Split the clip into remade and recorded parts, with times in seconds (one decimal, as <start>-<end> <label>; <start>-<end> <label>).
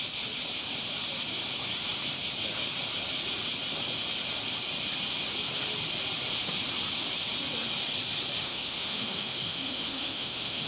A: 0.0-8.4 recorded; 8.4-10.7 remade